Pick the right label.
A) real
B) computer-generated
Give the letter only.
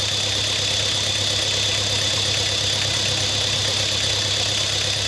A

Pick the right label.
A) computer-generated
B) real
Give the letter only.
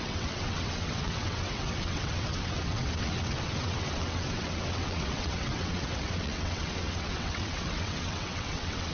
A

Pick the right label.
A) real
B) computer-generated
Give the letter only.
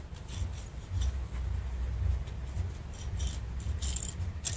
A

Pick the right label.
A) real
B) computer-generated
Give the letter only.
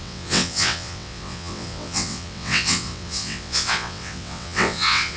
B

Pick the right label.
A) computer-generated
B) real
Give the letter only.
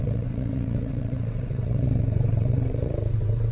A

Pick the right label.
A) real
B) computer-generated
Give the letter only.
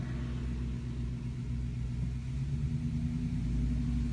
A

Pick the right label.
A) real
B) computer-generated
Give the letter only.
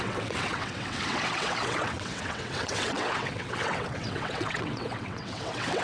B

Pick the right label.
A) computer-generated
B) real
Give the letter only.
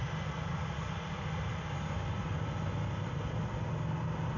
B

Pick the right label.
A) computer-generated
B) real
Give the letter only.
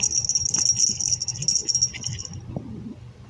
B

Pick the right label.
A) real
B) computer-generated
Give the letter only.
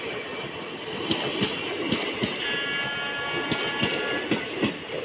A